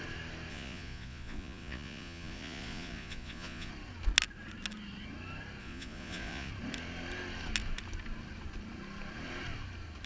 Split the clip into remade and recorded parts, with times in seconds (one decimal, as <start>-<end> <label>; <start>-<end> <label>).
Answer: 0.0-0.5 recorded; 0.5-3.7 remade; 3.7-5.6 recorded; 5.6-6.5 remade; 6.5-10.1 recorded